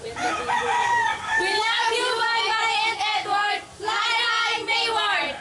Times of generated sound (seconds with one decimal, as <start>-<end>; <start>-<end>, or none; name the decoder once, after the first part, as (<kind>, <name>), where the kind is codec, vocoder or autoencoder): 0.8-4.0 (codec, DAC)

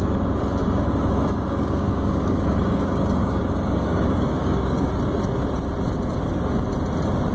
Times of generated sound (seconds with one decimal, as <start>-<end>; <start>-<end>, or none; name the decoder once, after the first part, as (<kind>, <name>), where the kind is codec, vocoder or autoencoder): 0.6-5.0 (codec, DAC)